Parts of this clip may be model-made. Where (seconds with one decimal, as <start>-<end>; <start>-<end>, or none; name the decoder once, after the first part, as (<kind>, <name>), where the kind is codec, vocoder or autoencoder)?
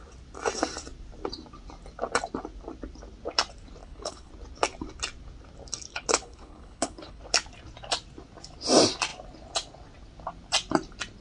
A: 3.8-4.3 (codec, HILCodec); 5.9-7.2